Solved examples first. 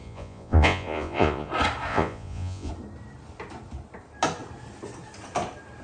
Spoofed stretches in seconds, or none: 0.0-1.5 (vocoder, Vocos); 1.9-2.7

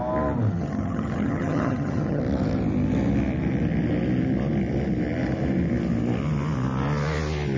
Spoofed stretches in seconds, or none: 0.5-2.2 (vocoder, HiFi-GAN)

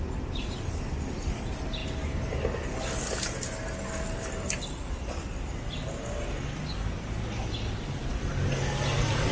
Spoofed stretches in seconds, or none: none

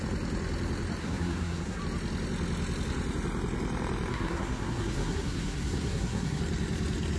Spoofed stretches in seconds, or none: 1.0-1.8 (codec, SNAC); 4.1-6.4

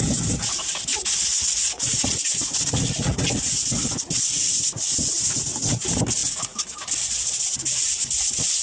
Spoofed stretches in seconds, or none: 0.9-3.2 (vocoder, Vocos); 6.2-6.9

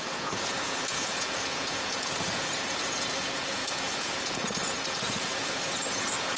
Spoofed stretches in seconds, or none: 0.0-6.4 (vocoder, Vocos)

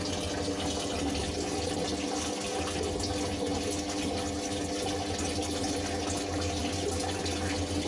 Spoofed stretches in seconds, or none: none

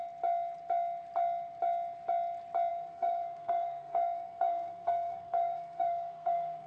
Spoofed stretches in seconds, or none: 2.7-6.7 (codec, SNAC)